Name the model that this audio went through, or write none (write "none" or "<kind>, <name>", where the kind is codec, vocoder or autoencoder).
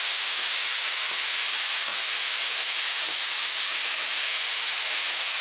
autoencoder, DAC-VAE